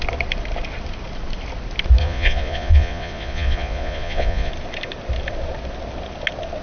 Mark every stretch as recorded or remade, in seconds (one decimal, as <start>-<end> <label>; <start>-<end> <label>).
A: 0.0-2.0 recorded; 2.0-4.5 remade; 4.5-6.6 recorded